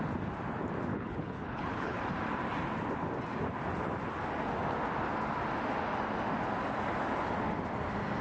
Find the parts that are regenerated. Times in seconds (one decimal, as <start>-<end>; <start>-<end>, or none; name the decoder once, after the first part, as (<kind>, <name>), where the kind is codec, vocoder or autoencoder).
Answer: 0.9-2.0 (codec, HILCodec)